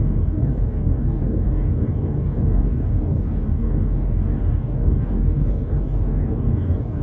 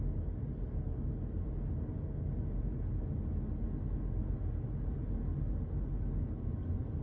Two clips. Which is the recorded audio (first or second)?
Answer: second